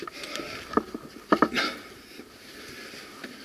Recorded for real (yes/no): yes